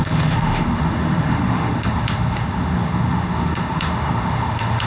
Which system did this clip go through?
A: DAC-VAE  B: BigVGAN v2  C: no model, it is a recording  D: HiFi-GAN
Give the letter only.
A